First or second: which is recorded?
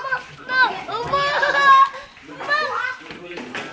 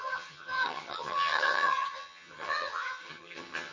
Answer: first